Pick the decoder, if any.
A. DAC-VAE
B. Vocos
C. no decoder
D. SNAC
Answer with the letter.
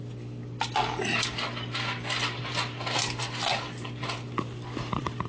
C